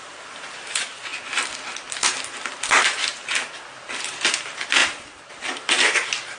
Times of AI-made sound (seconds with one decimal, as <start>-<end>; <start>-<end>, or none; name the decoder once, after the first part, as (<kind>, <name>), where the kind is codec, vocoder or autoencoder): 0.0-1.1 (vocoder, BigVGAN v2); 4.0-4.8; 5.3-6.4